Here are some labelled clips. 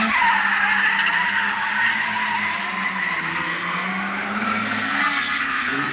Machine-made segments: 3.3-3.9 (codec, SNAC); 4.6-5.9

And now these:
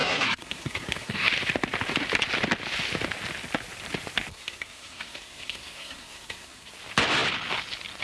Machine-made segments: 0.0-1.3 (codec, SNAC); 4.3-6.7